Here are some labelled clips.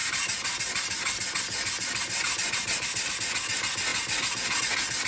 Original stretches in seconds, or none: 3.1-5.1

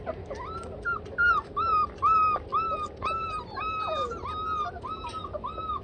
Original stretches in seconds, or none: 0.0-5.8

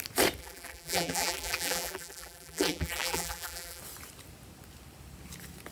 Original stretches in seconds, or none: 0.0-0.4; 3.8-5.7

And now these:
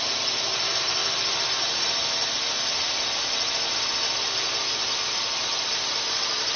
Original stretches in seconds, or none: 1.0-4.9